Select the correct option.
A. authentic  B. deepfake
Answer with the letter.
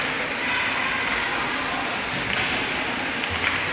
A